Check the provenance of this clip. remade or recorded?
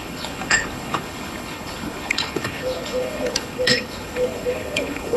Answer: remade